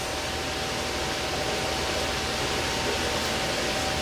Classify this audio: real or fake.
real